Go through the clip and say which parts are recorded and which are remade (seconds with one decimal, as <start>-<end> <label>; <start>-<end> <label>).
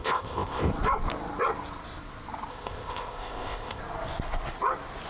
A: 0.0-0.7 remade; 0.7-2.5 recorded; 2.5-3.8 remade; 3.8-5.1 recorded